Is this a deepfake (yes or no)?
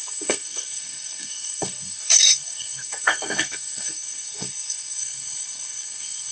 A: yes